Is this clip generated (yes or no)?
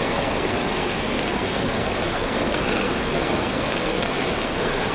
yes